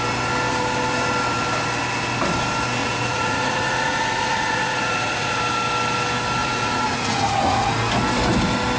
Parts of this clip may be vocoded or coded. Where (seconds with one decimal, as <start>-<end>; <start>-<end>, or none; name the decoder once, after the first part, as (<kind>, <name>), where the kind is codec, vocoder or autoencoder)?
2.8-5.4 (vocoder, Vocos); 6.4-7.7